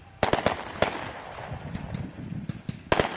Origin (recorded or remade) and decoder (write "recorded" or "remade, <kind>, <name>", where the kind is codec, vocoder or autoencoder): recorded